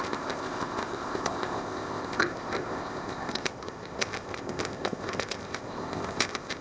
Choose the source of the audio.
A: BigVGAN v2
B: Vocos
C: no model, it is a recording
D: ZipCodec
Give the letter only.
D